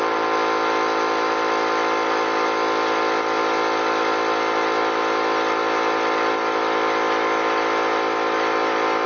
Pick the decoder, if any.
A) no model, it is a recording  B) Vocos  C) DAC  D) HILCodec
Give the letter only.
A